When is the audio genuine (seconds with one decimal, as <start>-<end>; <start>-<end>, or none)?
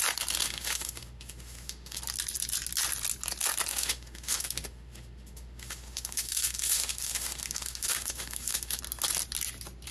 0.0-0.4; 2.0-3.7; 8.8-9.9